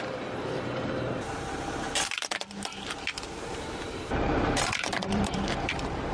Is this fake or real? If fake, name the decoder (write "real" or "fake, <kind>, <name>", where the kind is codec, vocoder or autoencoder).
fake, vocoder, BigVGAN v2